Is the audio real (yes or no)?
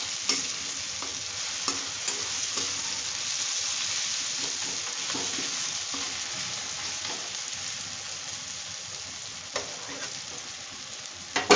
yes